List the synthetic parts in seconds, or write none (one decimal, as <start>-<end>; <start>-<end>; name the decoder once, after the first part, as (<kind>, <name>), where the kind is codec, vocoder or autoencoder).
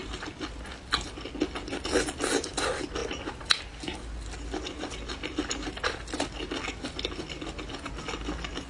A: none